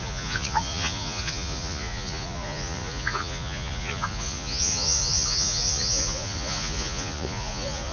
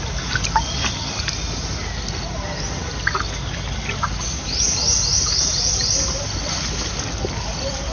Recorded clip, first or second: second